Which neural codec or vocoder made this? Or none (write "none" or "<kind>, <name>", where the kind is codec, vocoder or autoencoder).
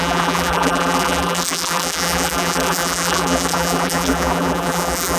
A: vocoder, BigVGAN v2